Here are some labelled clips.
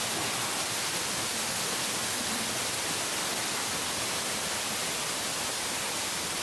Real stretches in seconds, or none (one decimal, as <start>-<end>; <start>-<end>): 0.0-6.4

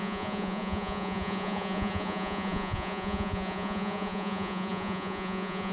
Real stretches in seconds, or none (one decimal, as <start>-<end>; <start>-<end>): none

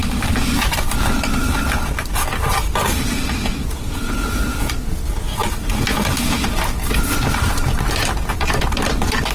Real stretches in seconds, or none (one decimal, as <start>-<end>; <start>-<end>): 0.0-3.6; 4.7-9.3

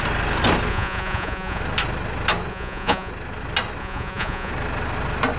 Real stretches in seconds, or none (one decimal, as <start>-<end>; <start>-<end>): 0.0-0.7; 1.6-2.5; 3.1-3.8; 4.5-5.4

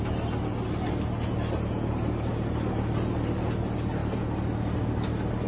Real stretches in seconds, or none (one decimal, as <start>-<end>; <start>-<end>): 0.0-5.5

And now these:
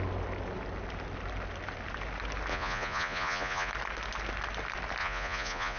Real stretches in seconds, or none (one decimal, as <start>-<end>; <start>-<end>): 0.0-2.5; 3.7-5.0

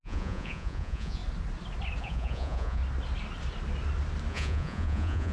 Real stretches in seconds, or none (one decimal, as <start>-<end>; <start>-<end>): 1.2-2.0; 2.8-4.3

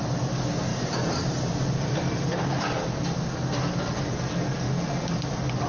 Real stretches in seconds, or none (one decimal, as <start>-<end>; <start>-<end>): 0.0-5.7